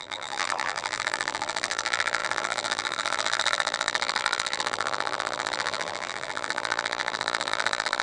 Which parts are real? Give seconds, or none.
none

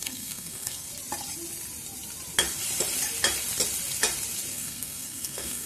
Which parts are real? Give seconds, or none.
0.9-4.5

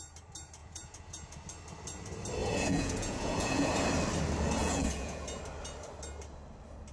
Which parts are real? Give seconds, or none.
0.0-0.6; 1.4-2.4; 3.7-4.6; 5.4-6.9